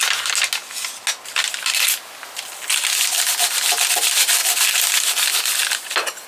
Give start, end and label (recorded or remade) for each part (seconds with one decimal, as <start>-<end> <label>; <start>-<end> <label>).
0.0-6.3 recorded